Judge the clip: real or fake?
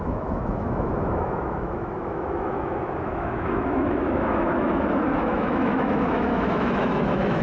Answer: fake